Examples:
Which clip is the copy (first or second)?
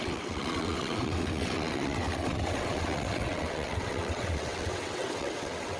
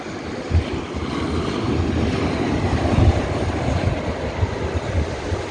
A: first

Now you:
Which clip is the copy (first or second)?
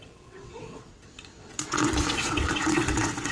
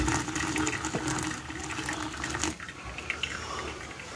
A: first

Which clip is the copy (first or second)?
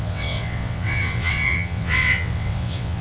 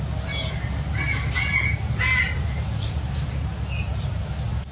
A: first